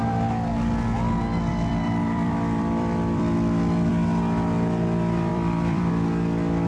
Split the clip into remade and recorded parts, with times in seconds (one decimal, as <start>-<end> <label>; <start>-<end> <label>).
0.0-1.5 recorded; 1.5-3.9 remade; 3.9-5.3 recorded; 5.3-5.9 remade; 5.9-6.7 recorded